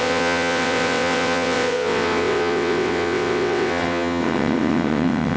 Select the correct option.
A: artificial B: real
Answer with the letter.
A